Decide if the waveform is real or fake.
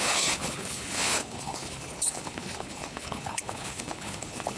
fake